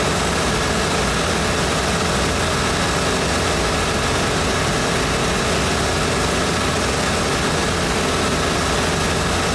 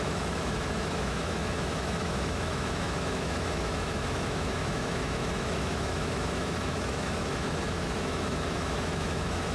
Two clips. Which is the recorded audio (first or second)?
first